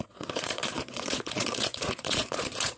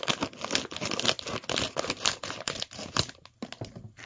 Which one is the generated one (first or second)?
first